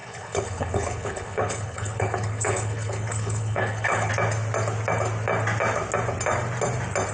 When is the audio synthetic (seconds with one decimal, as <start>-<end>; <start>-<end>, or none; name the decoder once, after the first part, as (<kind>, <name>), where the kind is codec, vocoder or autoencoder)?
0.0-4.1 (codec, HILCodec)